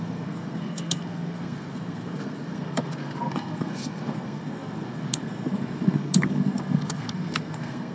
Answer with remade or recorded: remade